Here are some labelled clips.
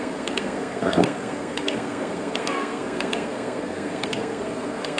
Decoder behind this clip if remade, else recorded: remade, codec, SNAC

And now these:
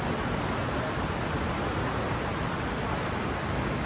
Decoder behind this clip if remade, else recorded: recorded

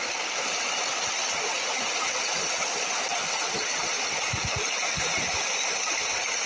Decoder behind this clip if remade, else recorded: recorded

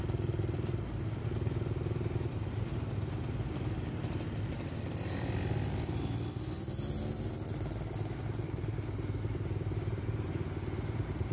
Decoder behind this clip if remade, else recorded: recorded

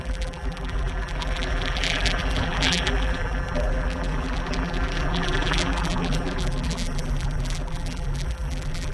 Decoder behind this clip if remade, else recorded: remade, vocoder, BigVGAN v2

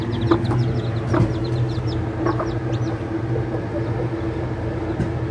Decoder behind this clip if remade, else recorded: recorded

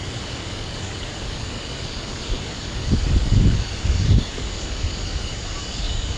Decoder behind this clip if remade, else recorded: remade, codec, DAC